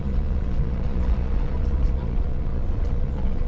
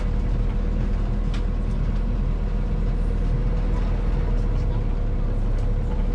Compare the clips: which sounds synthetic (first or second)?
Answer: first